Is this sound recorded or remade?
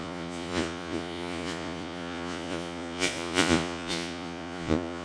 remade